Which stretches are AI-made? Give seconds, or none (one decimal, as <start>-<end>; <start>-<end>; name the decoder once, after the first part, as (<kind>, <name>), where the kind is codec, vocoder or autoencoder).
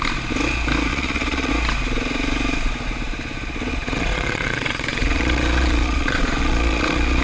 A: 0.9-1.5 (vocoder, Vocos); 3.7-7.2